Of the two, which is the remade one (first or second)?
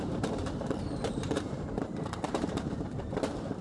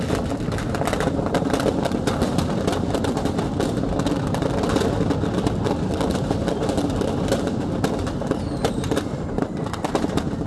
first